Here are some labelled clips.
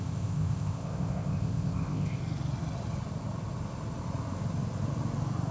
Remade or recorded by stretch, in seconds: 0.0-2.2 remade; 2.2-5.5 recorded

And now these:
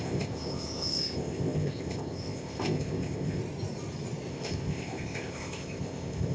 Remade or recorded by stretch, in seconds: 0.0-3.4 remade; 3.4-4.3 recorded; 4.3-6.3 remade

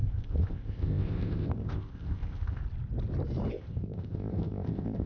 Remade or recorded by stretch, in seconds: 0.0-2.6 remade; 2.6-3.5 recorded; 3.5-5.1 remade

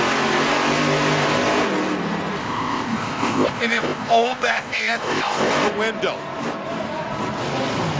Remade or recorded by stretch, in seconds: 0.0-2.4 recorded; 2.4-5.5 remade; 5.5-8.0 recorded